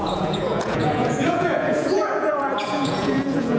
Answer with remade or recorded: remade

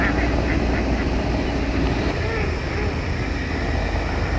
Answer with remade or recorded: recorded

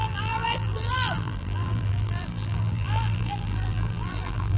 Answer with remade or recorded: remade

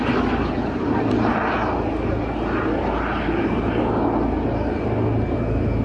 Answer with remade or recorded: recorded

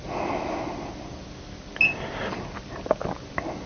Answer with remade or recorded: recorded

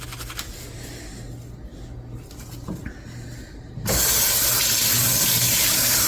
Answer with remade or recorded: recorded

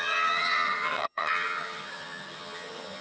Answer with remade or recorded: remade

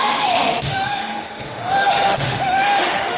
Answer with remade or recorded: remade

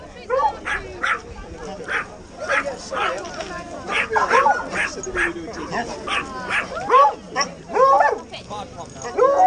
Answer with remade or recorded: recorded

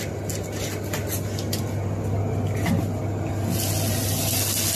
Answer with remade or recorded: recorded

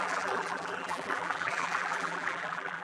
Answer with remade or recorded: remade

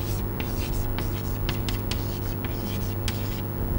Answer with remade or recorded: recorded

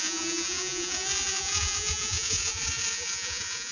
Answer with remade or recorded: remade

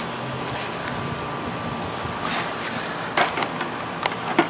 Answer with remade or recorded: recorded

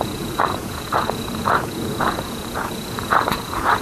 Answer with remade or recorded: remade